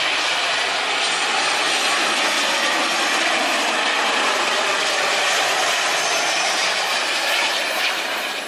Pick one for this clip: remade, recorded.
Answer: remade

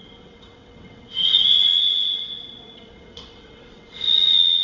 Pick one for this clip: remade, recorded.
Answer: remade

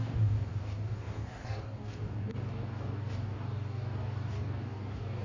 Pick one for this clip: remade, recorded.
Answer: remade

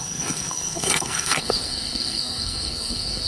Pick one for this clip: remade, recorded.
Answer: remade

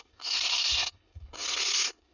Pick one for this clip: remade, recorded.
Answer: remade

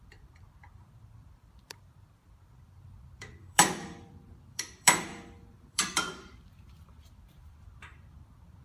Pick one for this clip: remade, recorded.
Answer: remade